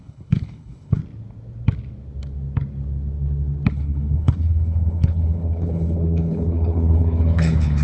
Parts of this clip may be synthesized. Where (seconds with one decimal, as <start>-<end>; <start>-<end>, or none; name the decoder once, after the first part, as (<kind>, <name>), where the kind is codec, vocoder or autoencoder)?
0.0-1.0 (codec, HILCodec); 3.7-7.8